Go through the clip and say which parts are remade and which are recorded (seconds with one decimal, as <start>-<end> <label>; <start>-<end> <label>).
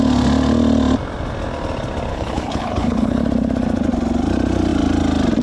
0.0-2.1 recorded; 2.1-3.2 remade; 3.2-5.4 recorded